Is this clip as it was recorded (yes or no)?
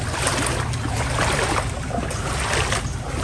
yes